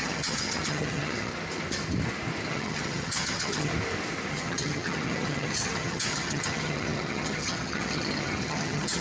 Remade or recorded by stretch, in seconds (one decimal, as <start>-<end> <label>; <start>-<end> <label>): 0.0-1.3 remade; 1.3-2.5 recorded; 2.5-3.7 remade; 3.7-4.3 recorded; 4.3-9.0 remade